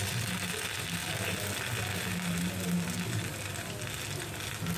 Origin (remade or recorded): recorded